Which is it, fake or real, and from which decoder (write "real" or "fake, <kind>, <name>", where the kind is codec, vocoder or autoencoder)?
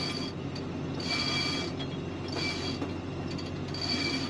real